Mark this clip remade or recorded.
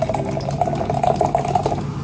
recorded